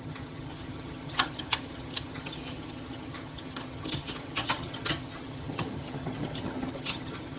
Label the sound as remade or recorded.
remade